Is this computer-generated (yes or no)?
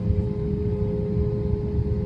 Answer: no